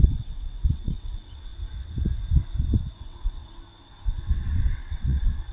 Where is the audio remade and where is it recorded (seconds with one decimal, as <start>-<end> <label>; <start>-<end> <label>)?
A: 0.0-1.5 remade; 1.5-3.0 recorded; 3.0-3.4 remade; 3.4-4.2 recorded; 4.2-5.5 remade